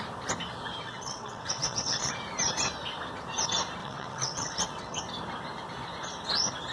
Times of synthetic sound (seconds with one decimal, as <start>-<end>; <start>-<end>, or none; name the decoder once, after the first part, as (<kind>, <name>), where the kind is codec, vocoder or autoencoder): 0.8-2.1 (vocoder, WaveNeXt); 3.8-5.0